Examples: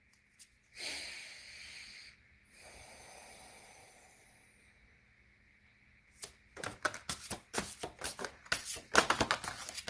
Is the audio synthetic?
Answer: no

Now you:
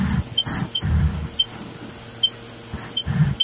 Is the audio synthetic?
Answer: no